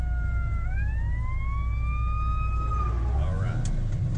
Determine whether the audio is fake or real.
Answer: real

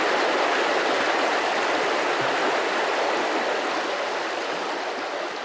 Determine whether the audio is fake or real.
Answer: real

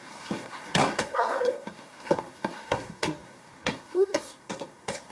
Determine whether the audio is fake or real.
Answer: fake